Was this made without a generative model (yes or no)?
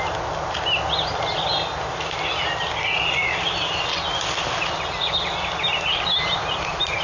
yes